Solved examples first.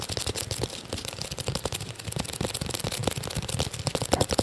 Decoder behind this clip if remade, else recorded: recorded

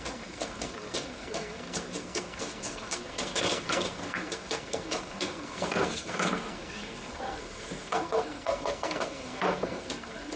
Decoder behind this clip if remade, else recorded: remade, codec, SNAC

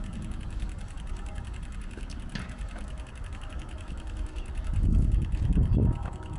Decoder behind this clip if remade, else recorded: remade, codec, DAC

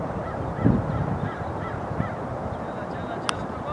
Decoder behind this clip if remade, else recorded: recorded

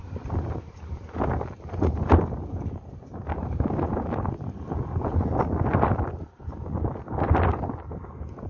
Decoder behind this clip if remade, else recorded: recorded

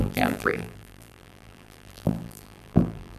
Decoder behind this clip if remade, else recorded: remade, vocoder, BigVGAN v2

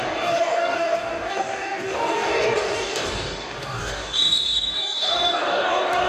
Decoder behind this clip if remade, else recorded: remade, codec, DAC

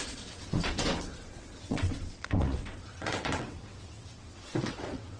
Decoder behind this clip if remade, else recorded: remade, vocoder, WaveNeXt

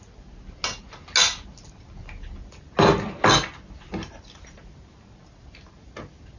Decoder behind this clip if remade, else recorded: recorded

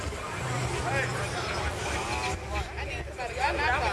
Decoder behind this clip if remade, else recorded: recorded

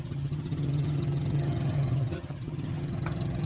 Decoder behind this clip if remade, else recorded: remade, vocoder, HiFi-GAN